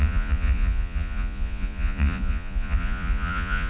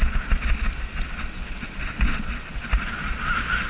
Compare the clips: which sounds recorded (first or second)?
second